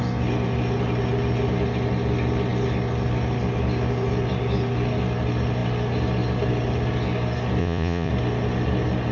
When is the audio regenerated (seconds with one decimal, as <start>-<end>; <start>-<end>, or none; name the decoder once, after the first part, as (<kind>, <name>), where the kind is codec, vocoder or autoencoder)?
7.6-8.1 (vocoder, Vocos)